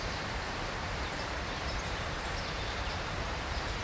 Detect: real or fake fake